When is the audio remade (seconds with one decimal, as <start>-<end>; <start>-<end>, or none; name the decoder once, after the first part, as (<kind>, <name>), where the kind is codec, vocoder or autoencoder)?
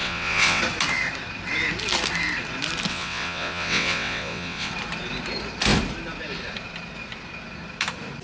0.0-0.6 (vocoder, WaveNeXt); 2.9-4.7